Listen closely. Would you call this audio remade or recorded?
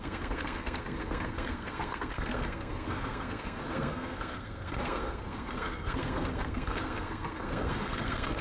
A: remade